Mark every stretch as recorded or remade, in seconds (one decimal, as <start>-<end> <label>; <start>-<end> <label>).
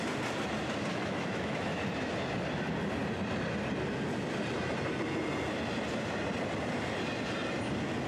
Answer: 0.0-0.9 recorded; 0.9-1.8 remade; 1.8-8.1 recorded